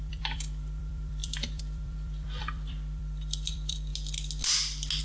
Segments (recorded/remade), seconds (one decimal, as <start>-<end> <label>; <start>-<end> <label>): 0.0-3.9 remade; 3.9-5.0 recorded